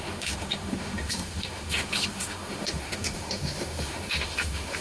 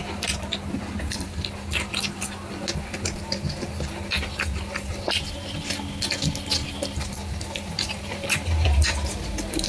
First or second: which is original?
second